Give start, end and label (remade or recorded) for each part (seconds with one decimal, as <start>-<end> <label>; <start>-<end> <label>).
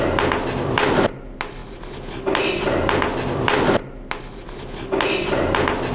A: 0.0-5.9 recorded